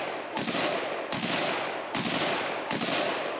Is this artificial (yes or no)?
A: no